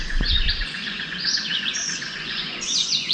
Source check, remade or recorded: remade